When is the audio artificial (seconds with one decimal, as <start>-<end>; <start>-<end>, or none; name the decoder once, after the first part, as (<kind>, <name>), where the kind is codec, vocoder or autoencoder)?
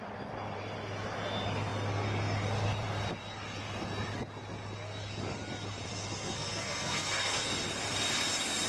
5.9-7.5 (codec, SNAC)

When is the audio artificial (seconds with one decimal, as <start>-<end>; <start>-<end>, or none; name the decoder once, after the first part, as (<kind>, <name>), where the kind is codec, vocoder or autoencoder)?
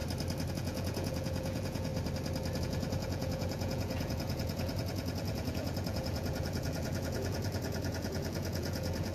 0.5-1.9 (vocoder, Vocos); 2.6-9.1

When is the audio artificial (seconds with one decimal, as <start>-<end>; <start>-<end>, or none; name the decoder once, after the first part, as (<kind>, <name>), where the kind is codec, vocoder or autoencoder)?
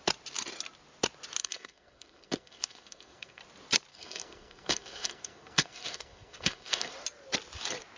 1.4-3.4 (codec, SNAC); 3.9-6.9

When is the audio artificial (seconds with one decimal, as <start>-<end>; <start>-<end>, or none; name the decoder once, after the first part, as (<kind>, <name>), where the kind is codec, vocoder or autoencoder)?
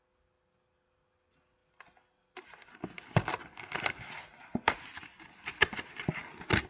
none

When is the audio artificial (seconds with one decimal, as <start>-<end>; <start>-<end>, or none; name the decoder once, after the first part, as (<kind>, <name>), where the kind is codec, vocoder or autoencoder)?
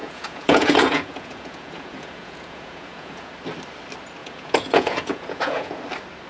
0.0-3.3 (vocoder, Vocos); 4.2-5.8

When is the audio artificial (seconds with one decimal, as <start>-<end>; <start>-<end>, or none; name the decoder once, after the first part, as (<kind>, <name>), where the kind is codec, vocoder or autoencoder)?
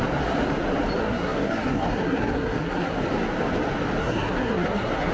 1.0-3.0 (codec, SNAC); 4.0-5.1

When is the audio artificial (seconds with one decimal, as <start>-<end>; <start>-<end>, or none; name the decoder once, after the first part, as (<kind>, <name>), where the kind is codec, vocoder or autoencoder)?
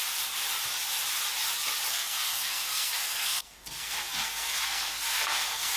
1.9-5.8 (codec, SNAC)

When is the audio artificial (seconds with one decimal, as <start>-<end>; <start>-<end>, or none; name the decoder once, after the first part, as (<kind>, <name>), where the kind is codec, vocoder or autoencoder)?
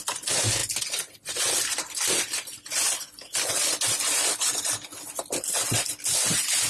none